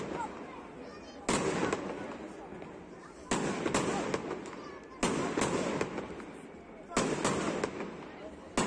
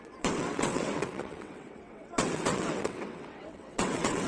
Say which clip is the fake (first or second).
second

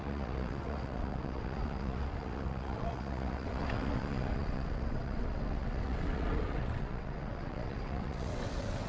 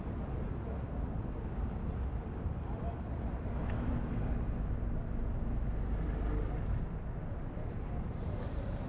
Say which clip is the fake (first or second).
first